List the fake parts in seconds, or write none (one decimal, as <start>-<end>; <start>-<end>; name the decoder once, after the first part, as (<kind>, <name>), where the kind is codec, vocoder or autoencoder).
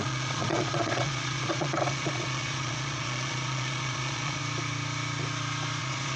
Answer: 0.0-4.4 (vocoder, Vocos); 5.8-6.2